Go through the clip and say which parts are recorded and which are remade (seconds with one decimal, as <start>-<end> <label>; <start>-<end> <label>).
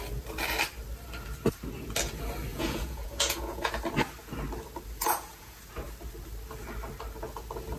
0.0-2.5 recorded; 2.5-3.7 remade; 3.7-5.0 recorded; 5.0-5.6 remade; 5.6-7.8 recorded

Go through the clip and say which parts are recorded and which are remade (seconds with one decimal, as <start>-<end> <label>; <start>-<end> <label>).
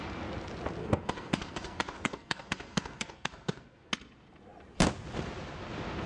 0.0-0.8 recorded; 0.8-3.9 remade; 3.9-6.1 recorded